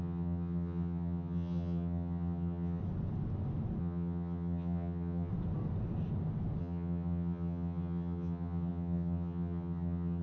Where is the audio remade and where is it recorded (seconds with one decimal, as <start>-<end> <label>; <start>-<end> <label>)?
0.0-2.8 remade; 2.8-3.8 recorded; 3.8-5.3 remade; 5.3-6.6 recorded; 6.6-10.2 remade